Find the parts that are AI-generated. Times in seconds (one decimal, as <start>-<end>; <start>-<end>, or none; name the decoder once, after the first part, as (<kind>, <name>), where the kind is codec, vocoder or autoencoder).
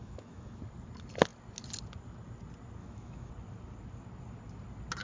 0.0-0.6 (autoencoder, DAC-VAE); 2.8-3.3